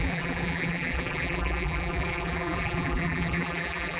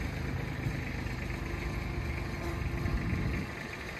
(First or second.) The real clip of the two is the second